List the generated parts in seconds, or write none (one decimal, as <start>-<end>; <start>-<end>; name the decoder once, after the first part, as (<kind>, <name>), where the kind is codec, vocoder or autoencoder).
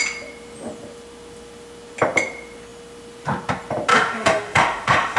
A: 3.9-5.2 (autoencoder, DAC-VAE)